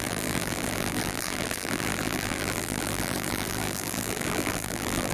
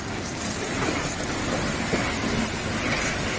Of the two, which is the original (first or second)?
second